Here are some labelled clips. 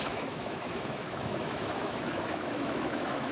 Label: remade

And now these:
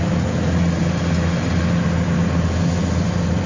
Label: recorded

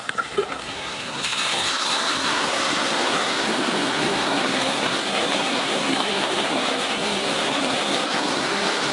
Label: remade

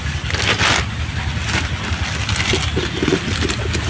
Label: recorded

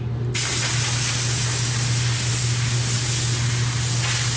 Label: recorded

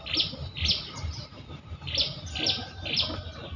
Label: recorded